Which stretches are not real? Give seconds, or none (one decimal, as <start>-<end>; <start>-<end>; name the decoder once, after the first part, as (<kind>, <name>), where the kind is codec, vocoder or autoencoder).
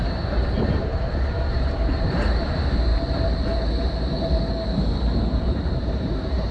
0.0-0.9 (vocoder, BigVGAN v2); 1.4-6.5